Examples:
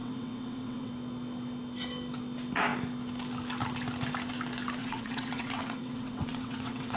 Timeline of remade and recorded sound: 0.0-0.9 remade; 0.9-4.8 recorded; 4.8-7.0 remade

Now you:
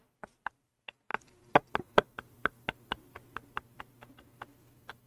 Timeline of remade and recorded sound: 0.0-5.1 recorded

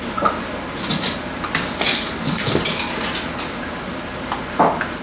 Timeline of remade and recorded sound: 0.0-5.0 recorded

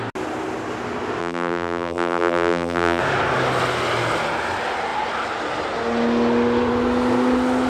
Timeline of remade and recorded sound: 0.0-1.2 recorded; 1.2-3.0 remade; 3.0-7.7 recorded

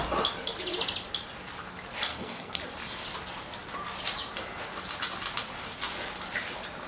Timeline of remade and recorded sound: 0.0-2.1 recorded; 2.1-2.6 remade; 2.6-6.9 recorded

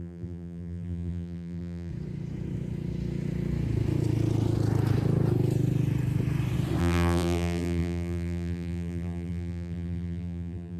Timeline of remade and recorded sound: 0.0-1.9 remade; 1.9-6.8 recorded; 6.8-10.8 remade